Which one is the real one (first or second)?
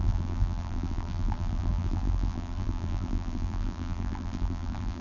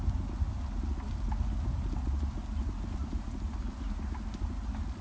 second